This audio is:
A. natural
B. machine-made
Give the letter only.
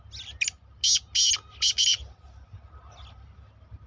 A